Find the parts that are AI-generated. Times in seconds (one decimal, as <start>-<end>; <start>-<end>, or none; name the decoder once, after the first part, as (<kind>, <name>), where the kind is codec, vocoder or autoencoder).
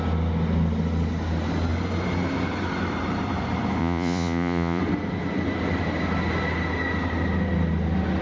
3.8-4.8 (vocoder, Vocos)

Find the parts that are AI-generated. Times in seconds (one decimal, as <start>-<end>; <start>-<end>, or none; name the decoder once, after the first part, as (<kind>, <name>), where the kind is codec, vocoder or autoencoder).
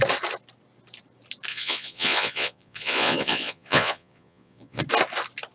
1.5-4.8 (vocoder, Vocos)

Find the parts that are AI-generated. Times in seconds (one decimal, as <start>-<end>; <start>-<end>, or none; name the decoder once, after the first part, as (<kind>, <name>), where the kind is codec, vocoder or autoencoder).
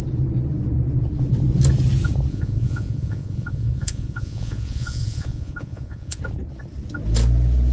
2.3-6.2 (vocoder, Vocos)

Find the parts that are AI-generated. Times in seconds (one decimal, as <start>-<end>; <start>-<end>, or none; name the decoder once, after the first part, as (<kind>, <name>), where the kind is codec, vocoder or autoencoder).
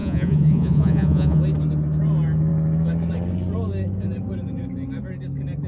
0.0-1.4 (vocoder, Vocos)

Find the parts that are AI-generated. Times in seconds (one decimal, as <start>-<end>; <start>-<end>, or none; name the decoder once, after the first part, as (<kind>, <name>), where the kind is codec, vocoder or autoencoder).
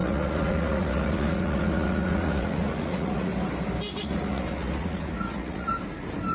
0.0-3.3 (vocoder, Vocos); 4.0-5.7